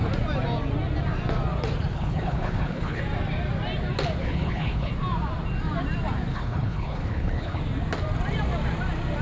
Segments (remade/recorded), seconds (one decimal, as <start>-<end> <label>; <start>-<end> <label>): 0.0-1.9 recorded; 1.9-3.0 remade; 3.0-4.2 recorded; 4.2-4.9 remade; 4.9-6.3 recorded; 6.3-7.6 remade; 7.6-9.2 recorded